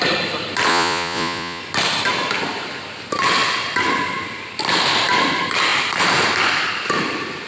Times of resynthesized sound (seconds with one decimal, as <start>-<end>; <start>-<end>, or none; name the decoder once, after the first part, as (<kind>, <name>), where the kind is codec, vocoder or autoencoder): 0.7-1.6 (vocoder, Vocos)